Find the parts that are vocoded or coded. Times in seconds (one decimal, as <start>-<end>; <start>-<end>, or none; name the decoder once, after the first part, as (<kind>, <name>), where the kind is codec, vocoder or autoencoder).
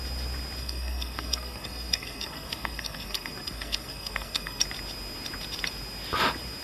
0.6-4.6 (codec, SNAC)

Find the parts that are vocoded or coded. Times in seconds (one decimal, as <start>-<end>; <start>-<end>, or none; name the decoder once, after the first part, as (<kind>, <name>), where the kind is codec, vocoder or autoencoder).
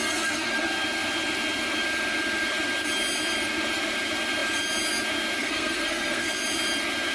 0.0-0.6 (codec, SNAC); 5.4-6.3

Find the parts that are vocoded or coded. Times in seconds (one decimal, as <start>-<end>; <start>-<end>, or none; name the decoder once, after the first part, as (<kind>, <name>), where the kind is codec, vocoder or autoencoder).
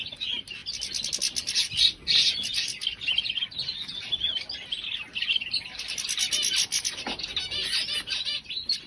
none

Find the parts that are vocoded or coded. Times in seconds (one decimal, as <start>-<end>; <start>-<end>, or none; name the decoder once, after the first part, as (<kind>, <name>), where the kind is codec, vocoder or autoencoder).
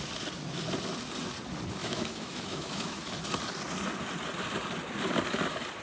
1.8-3.1 (autoencoder, DAC-VAE)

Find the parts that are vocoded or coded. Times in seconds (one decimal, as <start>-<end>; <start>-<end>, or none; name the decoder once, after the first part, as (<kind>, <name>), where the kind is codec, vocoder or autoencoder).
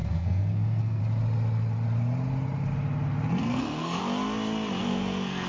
0.0-1.0 (codec, SNAC); 3.4-4.0; 4.8-5.5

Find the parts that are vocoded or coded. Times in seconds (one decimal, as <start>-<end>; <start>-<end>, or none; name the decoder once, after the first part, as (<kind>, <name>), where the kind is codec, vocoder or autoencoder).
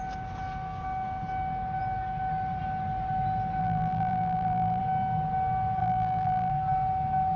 3.6-4.8 (vocoder, BigVGAN v2); 5.8-6.5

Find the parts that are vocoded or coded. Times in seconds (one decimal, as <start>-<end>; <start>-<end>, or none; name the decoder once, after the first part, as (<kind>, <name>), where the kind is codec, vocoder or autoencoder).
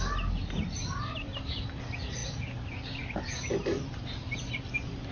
none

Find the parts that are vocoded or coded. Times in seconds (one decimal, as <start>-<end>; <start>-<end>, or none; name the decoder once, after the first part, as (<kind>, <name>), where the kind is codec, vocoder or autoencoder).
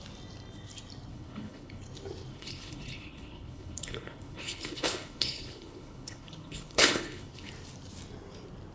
1.1-1.8 (codec, HILCodec); 2.3-7.5